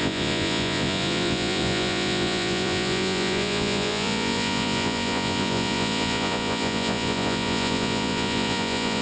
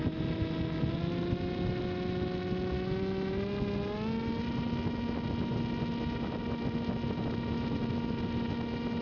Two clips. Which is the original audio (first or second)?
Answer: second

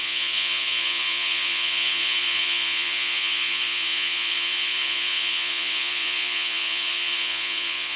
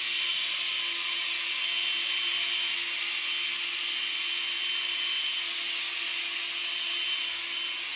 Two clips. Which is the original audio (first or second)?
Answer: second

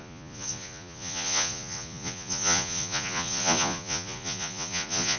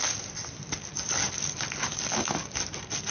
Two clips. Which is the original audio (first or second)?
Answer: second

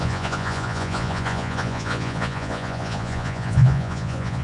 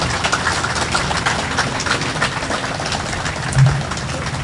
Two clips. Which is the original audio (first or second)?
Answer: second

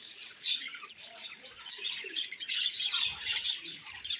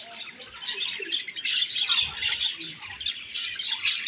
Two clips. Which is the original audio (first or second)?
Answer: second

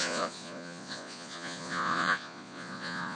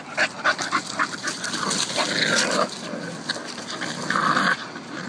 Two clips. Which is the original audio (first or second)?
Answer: second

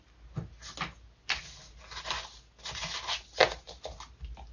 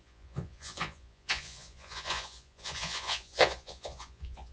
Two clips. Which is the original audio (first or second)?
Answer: first